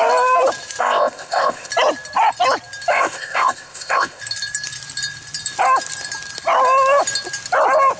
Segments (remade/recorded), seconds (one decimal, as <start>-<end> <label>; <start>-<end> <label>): 0.0-0.8 recorded; 0.8-1.7 remade; 1.7-2.9 recorded; 2.9-4.2 remade; 4.2-8.0 recorded